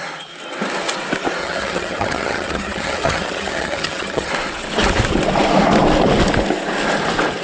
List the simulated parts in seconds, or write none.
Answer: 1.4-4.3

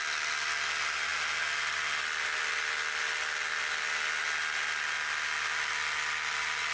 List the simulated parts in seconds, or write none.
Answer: none

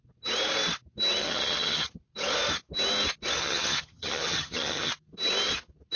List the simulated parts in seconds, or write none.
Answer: 1.2-1.9; 3.4-4.9

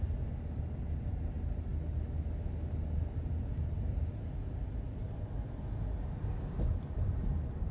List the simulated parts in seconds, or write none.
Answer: none

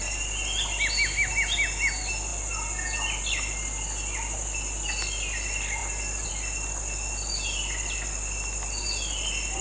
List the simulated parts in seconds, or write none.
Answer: none